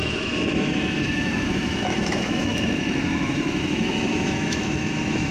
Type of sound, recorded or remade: remade